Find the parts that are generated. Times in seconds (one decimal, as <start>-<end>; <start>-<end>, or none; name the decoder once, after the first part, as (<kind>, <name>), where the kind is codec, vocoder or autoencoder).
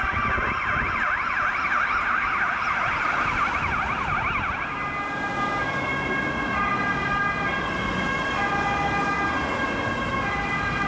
none